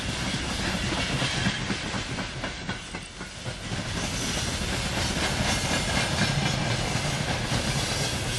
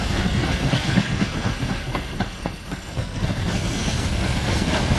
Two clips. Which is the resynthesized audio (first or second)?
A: second